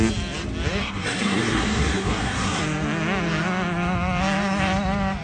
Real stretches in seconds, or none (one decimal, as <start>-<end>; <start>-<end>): 0.0-0.8; 2.6-5.2